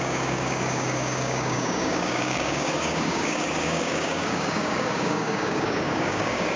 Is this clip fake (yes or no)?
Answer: yes